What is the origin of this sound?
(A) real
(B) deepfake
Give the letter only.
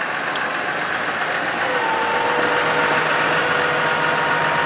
A